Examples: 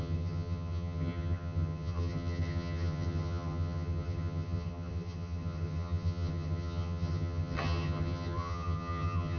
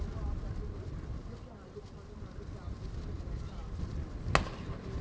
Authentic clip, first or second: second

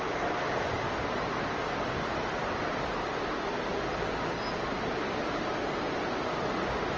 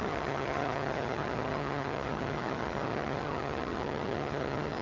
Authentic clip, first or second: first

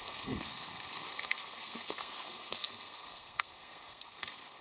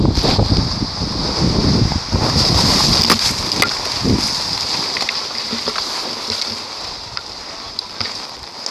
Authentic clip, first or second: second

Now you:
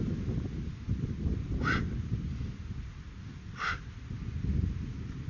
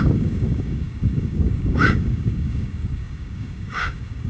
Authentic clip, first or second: first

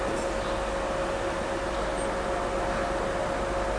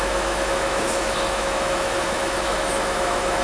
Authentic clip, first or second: first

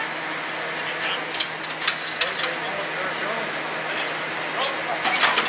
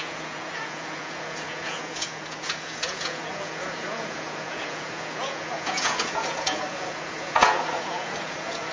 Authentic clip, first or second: first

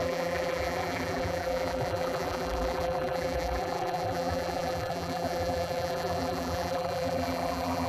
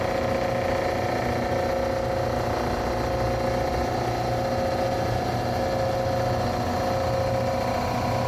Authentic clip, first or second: second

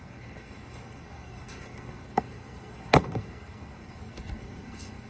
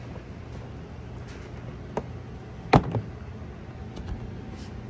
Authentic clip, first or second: second